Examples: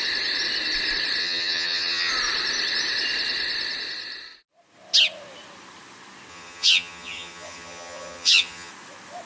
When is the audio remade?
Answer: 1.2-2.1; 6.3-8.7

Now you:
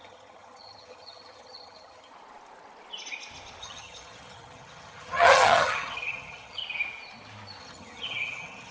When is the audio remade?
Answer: 0.0-2.1; 3.6-6.6; 7.6-8.7

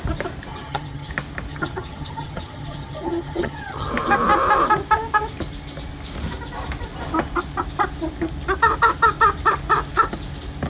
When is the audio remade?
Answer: 0.5-1.1; 1.5-3.9

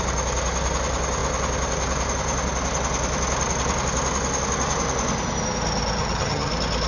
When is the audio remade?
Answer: 6.0-6.5